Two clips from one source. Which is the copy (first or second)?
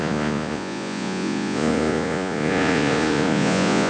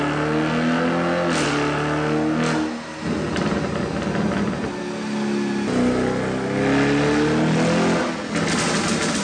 first